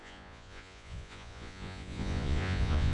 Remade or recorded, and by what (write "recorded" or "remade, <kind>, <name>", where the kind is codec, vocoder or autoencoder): remade, vocoder, Vocos